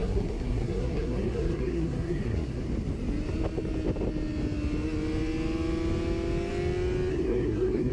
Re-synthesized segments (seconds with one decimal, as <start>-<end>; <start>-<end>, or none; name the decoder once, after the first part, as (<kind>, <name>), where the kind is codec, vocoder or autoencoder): 0.0-2.6 (codec, SNAC); 7.1-7.9